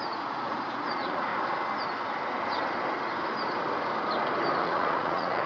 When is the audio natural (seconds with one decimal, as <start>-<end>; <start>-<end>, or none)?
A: 1.3-4.6